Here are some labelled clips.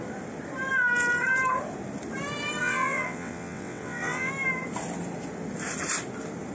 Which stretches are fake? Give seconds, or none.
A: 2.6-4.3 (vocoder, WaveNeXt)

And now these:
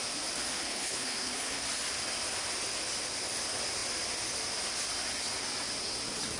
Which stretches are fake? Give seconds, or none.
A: 0.5-1.6 (codec, HILCodec)

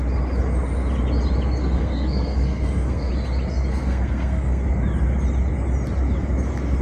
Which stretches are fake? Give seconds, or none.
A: 1.6-3.1 (codec, SNAC); 3.7-4.6

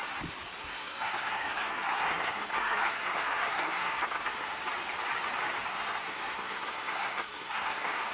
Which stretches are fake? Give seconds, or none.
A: 0.6-4.6 (codec, SNAC); 5.7-8.1

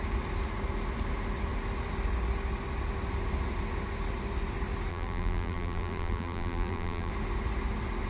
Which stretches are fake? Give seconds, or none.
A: 4.9-7.1 (vocoder, BigVGAN v2)

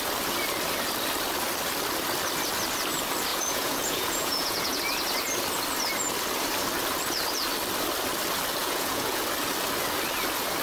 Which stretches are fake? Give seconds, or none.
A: 3.3-4.8 (vocoder, Vocos); 8.6-9.2